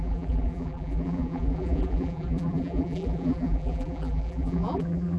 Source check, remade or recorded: remade